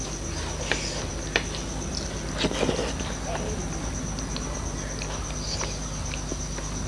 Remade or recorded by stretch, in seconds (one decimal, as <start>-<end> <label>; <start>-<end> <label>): 0.0-6.9 recorded